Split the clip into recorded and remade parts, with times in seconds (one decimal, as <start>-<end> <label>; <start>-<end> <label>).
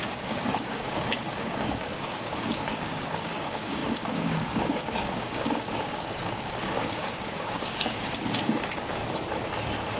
0.0-9.0 remade; 9.0-10.0 recorded